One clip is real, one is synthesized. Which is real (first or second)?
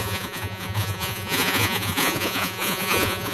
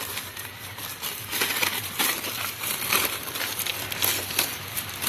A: second